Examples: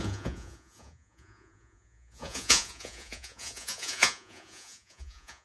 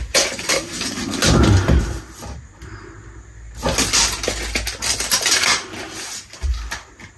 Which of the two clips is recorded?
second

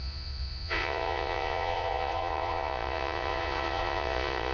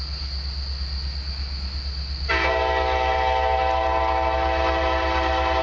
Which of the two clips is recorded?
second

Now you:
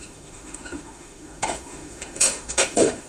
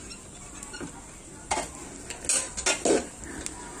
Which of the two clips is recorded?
second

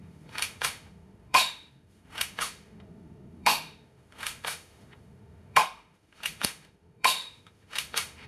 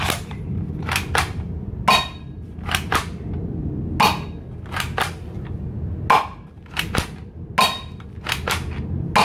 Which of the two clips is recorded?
second